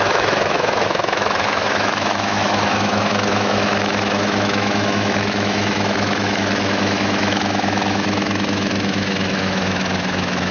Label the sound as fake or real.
fake